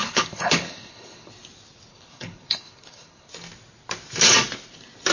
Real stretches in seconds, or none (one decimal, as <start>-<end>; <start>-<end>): 1.3-1.9; 3.3-5.1